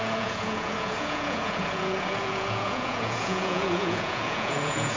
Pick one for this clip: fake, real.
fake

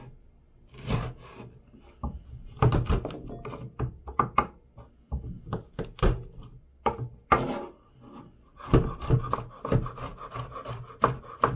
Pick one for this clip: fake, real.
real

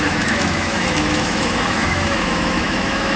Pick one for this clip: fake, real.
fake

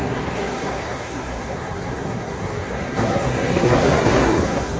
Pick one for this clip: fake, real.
fake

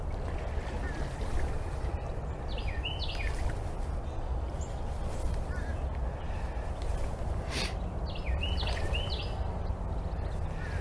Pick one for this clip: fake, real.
real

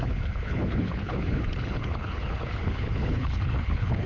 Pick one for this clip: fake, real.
fake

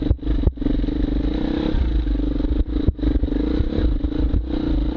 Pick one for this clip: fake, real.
real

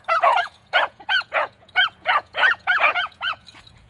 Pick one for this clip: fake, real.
fake